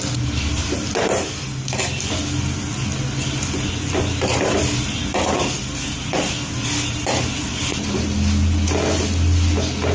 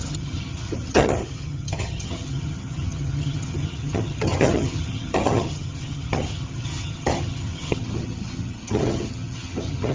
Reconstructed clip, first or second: second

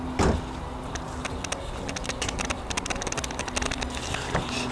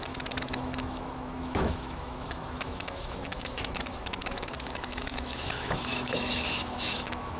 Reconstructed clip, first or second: second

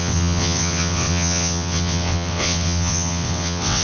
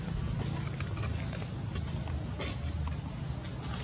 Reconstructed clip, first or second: first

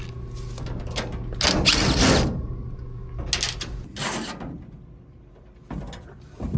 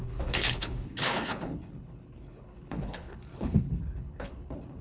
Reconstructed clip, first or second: second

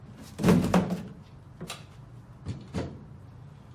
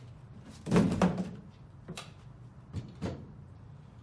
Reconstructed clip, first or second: second